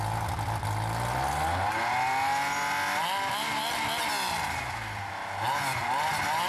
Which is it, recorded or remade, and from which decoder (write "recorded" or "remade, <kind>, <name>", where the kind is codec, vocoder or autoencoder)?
recorded